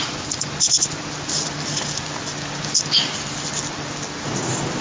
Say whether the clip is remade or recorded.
recorded